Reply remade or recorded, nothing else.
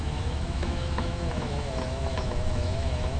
remade